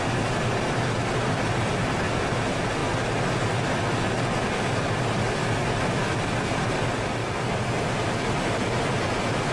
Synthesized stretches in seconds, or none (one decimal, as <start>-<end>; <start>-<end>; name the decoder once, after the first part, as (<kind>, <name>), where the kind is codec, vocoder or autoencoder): none